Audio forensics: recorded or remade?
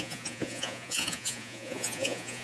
remade